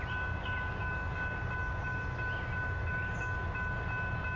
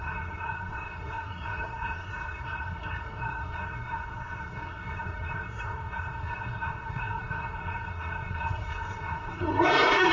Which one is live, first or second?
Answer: first